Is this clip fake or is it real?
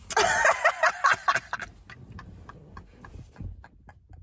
real